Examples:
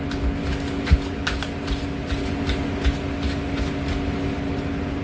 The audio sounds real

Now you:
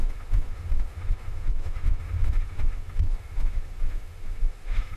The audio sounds fake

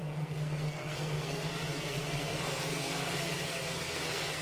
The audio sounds fake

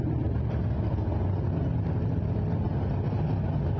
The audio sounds real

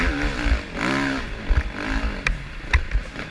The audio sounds real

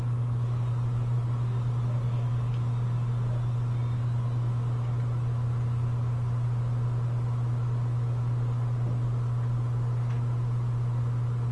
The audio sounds real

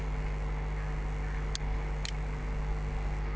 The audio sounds real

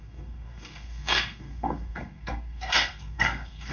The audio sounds fake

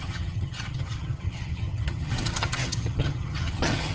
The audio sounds fake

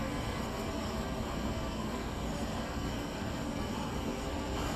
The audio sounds fake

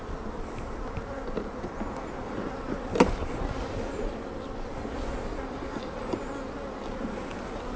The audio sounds real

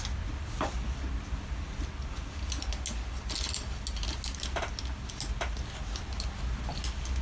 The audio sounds real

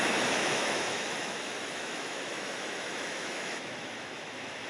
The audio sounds fake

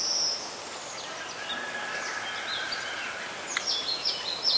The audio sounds real